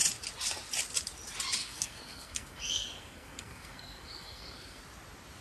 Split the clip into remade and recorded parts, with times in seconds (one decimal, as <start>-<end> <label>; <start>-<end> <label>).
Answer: 0.0-1.6 recorded; 1.6-4.8 remade; 4.8-5.4 recorded

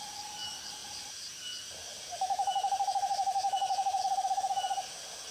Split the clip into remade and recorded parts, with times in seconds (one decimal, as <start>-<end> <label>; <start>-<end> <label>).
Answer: 0.0-0.8 recorded; 0.8-4.0 remade; 4.0-5.3 recorded

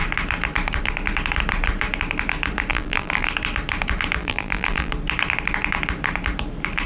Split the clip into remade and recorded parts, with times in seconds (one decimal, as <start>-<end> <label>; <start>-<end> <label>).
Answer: 0.0-2.7 recorded; 2.7-3.3 remade; 3.3-4.2 recorded; 4.2-4.9 remade; 4.9-6.9 recorded

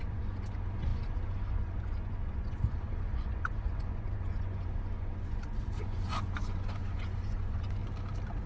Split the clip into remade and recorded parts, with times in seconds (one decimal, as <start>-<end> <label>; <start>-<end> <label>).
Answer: 0.0-7.8 remade; 7.8-8.5 recorded